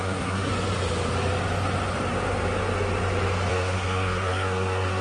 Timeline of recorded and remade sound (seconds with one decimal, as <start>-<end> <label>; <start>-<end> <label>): 0.0-0.5 remade; 0.5-3.5 recorded; 3.5-5.0 remade